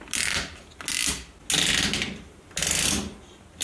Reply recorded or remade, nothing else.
recorded